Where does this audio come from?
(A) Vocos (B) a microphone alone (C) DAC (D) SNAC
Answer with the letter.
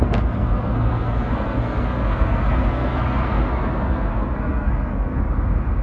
D